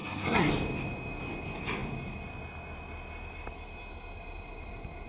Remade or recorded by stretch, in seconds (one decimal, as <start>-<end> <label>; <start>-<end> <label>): 0.0-0.5 remade; 0.5-5.1 recorded